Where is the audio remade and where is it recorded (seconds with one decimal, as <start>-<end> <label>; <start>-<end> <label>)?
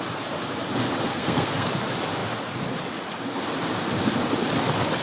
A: 0.0-1.1 recorded; 1.1-1.7 remade; 1.7-5.0 recorded